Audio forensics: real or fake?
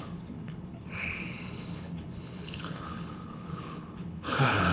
fake